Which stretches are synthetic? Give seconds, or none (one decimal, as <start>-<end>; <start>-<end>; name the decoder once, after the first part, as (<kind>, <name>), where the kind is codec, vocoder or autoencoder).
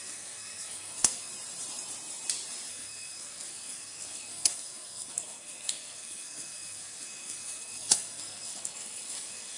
0.0-1.3 (codec, SNAC); 2.7-9.6